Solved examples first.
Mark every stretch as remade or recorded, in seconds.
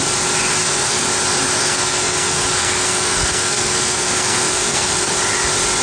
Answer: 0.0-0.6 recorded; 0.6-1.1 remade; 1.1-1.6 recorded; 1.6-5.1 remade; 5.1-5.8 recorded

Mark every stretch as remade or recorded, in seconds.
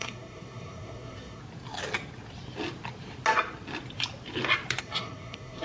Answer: 0.0-1.4 remade; 1.4-4.8 recorded; 4.8-5.6 remade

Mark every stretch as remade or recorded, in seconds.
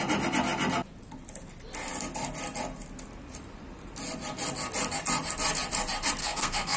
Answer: 0.0-6.2 recorded; 6.2-6.8 remade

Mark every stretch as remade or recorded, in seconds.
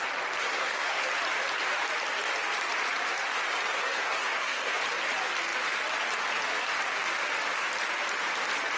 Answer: 0.0-0.4 recorded; 0.4-1.0 remade; 1.0-3.7 recorded; 3.7-4.8 remade; 4.8-8.8 recorded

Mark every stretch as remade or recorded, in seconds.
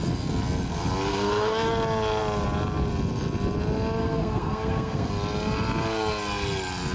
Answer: 0.0-1.1 recorded; 1.1-1.7 remade; 1.7-4.0 recorded; 4.0-5.1 remade; 5.1-6.9 recorded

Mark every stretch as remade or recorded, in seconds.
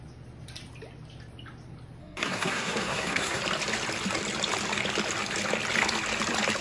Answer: 0.0-2.0 recorded; 2.0-3.4 remade; 3.4-6.6 recorded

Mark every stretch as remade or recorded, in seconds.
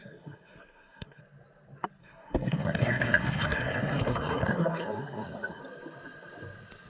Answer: 0.0-1.2 remade; 1.2-2.0 recorded; 2.0-5.6 remade; 5.6-6.9 recorded